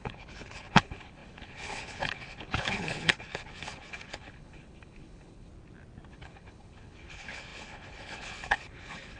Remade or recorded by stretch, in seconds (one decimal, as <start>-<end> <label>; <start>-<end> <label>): 0.0-5.5 remade; 5.5-6.1 recorded; 6.1-9.2 remade